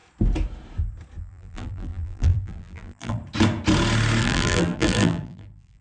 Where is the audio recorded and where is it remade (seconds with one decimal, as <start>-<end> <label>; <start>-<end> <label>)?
0.0-1.2 recorded; 1.2-3.2 remade; 3.2-4.2 recorded; 4.2-5.8 remade

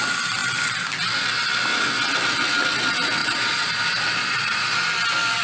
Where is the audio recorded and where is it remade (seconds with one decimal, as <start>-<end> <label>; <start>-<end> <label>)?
0.0-3.2 recorded; 3.2-3.8 remade; 3.8-4.2 recorded; 4.2-4.8 remade; 4.8-5.4 recorded

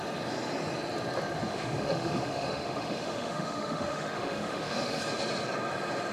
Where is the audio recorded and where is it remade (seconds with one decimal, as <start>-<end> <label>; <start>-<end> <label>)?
0.0-1.5 recorded; 1.5-5.0 remade; 5.0-6.1 recorded

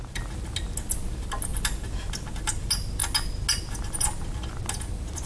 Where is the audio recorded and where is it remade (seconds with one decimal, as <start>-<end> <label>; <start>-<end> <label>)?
0.0-5.3 recorded